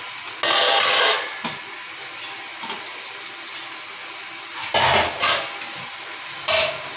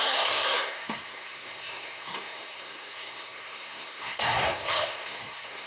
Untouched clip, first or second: first